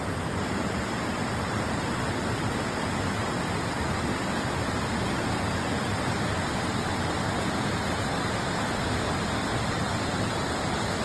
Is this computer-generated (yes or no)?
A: no